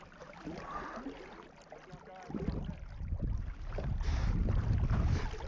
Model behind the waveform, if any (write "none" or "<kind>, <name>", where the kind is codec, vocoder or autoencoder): none